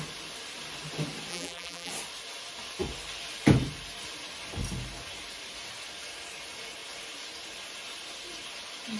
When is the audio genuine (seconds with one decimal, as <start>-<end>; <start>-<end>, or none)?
0.0-1.3; 1.9-9.0